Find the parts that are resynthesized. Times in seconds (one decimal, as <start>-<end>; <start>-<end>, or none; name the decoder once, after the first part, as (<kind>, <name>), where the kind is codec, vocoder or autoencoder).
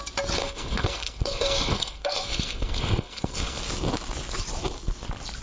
0.4-3.6 (codec, SNAC)